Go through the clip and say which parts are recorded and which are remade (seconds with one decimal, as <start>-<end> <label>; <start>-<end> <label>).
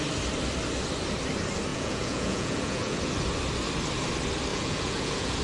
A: 0.0-1.7 recorded; 1.7-3.0 remade; 3.0-4.5 recorded; 4.5-5.4 remade